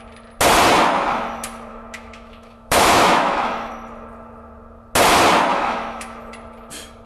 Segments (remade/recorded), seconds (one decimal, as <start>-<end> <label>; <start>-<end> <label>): 0.0-1.7 recorded; 1.7-3.7 remade; 3.7-5.5 recorded; 5.5-6.3 remade; 6.3-7.1 recorded

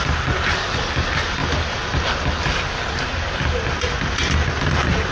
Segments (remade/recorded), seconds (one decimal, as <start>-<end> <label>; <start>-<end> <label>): 0.0-5.1 recorded